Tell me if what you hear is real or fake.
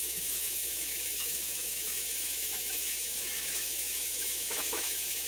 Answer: fake